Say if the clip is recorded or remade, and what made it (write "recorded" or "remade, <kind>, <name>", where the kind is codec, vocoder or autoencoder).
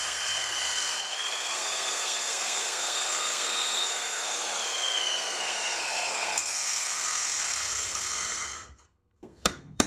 remade, codec, SNAC